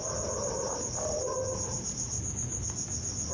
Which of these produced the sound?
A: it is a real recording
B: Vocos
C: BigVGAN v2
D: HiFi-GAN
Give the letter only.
A